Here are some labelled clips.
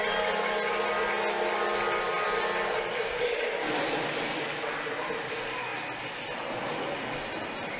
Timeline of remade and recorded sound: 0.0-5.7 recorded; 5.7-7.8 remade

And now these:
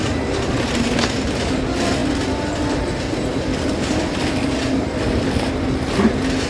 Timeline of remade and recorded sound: 0.0-2.0 recorded; 2.0-5.7 remade; 5.7-6.5 recorded

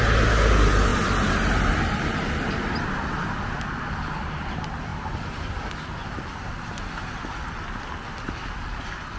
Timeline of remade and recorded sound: 0.0-4.9 recorded; 4.9-5.6 remade; 5.6-9.2 recorded

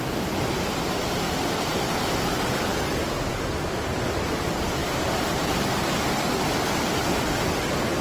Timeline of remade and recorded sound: 0.0-4.8 recorded; 4.8-5.5 remade; 5.5-8.0 recorded